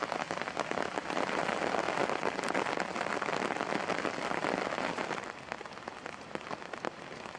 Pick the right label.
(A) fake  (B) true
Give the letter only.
B